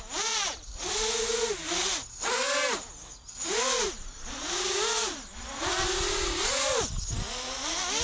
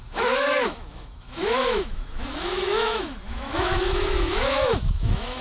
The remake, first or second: second